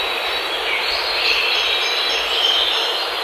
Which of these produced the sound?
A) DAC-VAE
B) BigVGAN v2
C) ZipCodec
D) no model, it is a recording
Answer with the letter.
D